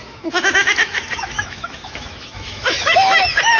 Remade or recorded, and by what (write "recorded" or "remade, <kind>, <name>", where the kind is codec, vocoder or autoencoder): remade, autoencoder, DAC-VAE